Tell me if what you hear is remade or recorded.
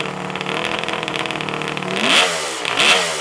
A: recorded